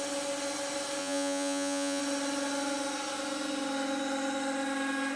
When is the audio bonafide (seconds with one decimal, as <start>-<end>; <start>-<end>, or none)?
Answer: 0.0-1.0; 2.0-5.2